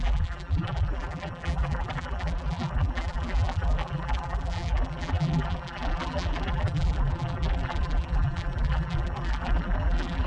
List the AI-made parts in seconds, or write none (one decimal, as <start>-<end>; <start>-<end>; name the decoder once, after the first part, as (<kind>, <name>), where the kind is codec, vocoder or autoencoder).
0.0-10.3 (vocoder, BigVGAN v2)